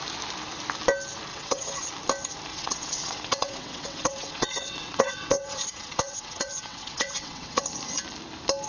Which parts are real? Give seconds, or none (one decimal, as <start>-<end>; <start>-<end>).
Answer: 0.0-1.3; 1.9-2.5; 7.6-8.7